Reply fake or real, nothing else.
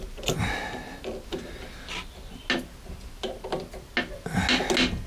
real